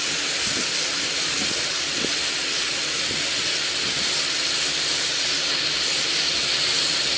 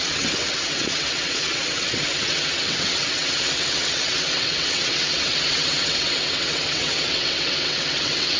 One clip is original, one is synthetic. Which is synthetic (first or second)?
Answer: second